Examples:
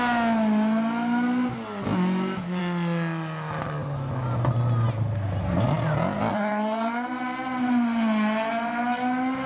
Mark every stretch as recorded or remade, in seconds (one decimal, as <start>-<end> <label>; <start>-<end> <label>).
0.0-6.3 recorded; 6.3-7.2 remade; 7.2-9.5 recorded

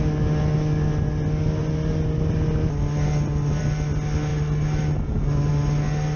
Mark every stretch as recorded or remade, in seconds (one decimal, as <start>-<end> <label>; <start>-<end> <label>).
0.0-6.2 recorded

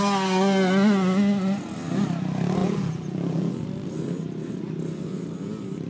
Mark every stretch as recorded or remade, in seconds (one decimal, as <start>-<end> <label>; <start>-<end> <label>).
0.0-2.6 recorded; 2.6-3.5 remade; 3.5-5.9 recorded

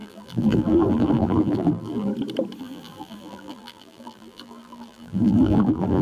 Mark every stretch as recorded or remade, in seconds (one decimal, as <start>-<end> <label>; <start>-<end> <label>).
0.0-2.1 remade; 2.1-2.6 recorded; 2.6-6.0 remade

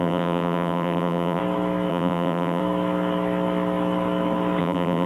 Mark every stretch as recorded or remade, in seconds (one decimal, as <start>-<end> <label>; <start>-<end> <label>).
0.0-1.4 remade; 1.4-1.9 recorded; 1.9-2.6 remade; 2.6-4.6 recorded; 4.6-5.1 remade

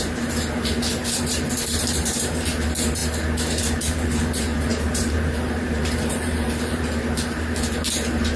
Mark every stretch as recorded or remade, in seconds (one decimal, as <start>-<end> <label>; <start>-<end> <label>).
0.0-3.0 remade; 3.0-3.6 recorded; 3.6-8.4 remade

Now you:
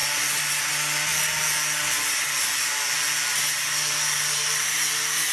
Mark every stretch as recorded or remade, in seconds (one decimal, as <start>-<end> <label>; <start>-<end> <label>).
0.0-0.7 recorded; 0.7-1.1 remade; 1.1-3.3 recorded; 3.3-5.3 remade